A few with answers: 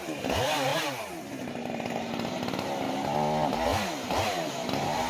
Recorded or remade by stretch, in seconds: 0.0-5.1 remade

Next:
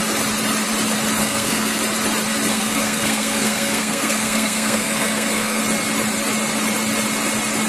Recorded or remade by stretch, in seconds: 0.0-1.2 recorded; 1.2-1.8 remade; 1.8-2.5 recorded; 2.5-5.6 remade; 5.6-7.7 recorded

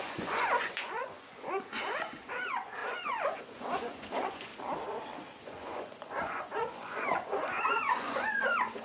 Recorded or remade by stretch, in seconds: 0.0-4.5 remade; 4.5-5.4 recorded; 5.4-8.8 remade